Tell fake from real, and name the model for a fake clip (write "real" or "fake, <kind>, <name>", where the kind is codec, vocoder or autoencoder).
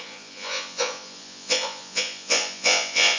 fake, vocoder, Vocos